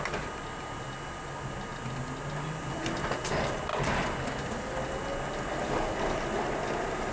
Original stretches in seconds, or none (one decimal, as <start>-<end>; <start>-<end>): 0.0-7.1